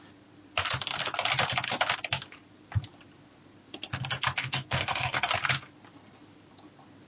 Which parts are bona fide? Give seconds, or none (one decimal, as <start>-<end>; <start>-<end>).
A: 0.0-4.4; 5.3-7.1